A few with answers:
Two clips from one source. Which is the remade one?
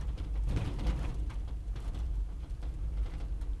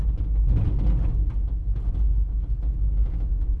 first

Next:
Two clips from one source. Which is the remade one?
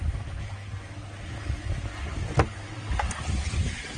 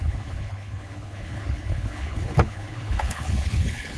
second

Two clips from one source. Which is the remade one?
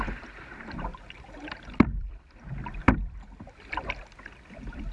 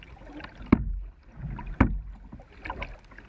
first